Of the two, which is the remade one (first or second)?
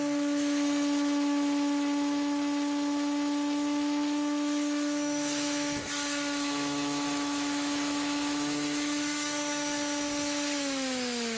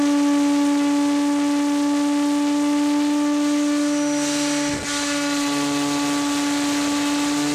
first